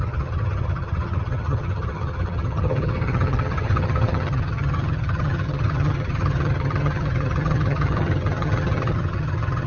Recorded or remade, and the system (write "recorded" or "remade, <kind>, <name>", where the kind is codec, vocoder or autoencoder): remade, vocoder, HiFi-GAN